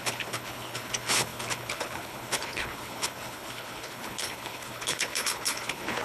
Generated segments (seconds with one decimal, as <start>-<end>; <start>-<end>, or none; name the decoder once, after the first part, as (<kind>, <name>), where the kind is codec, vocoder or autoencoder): 0.0-6.0 (codec, HILCodec)